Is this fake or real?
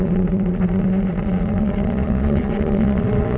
fake